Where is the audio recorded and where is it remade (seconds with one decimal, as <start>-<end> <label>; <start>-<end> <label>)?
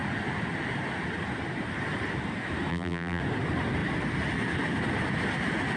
0.0-2.7 recorded; 2.7-3.2 remade; 3.2-5.8 recorded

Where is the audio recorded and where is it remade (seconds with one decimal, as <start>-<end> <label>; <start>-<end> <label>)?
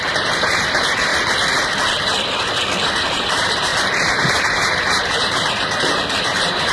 0.0-1.1 remade; 1.1-2.8 recorded; 2.8-6.7 remade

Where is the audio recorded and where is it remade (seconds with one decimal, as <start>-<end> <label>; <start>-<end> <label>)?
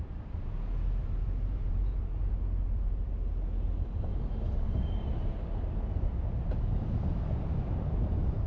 0.0-1.0 recorded; 1.0-2.3 remade; 2.3-4.1 recorded; 4.1-4.6 remade; 4.6-8.5 recorded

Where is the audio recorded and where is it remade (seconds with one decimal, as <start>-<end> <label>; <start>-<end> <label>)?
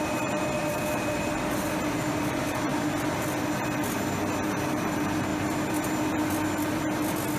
0.0-2.7 remade; 2.7-4.5 recorded; 4.5-5.3 remade; 5.3-7.4 recorded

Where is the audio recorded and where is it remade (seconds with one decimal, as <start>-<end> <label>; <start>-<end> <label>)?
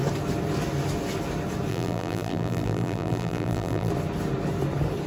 0.0-1.7 recorded; 1.7-3.9 remade; 3.9-5.1 recorded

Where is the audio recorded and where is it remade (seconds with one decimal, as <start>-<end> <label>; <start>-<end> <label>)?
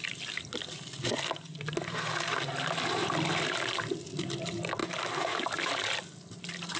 0.0-6.8 recorded